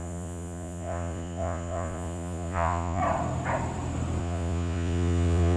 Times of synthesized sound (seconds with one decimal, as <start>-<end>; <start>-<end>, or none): 0.0-3.0; 4.2-5.6